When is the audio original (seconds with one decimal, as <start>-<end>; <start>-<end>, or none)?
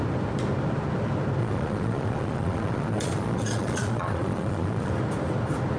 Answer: 0.0-1.4; 4.9-5.8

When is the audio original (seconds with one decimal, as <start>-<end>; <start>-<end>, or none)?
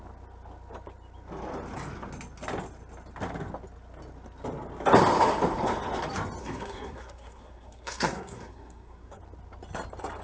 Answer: 0.0-6.4; 9.2-10.2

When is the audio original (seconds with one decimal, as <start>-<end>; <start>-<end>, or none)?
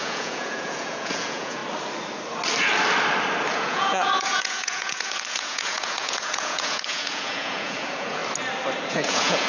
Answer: 1.6-3.5; 8.2-8.9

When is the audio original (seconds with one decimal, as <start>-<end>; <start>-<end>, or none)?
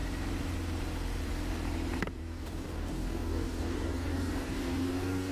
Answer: 0.0-2.2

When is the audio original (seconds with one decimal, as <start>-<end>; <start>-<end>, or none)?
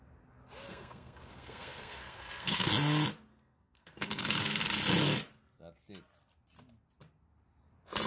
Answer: 0.0-0.7; 2.7-3.3; 4.6-8.1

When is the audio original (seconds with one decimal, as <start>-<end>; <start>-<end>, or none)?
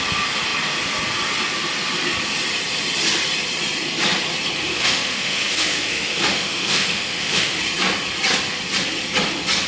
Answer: 0.0-4.7; 7.6-9.7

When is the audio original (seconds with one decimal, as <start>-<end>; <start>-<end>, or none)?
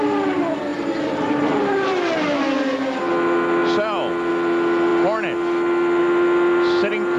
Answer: 0.0-0.7; 3.0-7.2